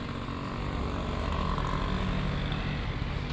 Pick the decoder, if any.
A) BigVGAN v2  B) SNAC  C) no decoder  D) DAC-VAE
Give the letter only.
C